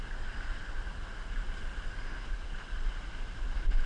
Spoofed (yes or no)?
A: no